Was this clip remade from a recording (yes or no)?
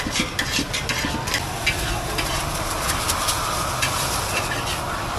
no